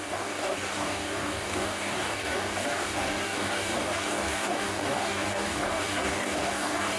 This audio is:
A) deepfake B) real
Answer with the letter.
A